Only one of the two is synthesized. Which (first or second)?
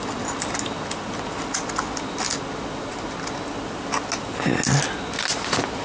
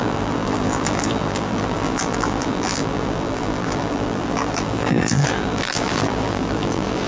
second